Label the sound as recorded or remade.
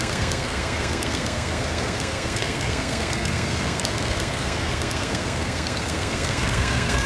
remade